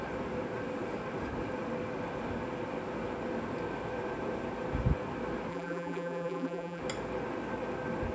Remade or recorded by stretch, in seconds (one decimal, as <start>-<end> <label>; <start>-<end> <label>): 0.0-5.5 recorded; 5.5-6.8 remade; 6.8-8.1 recorded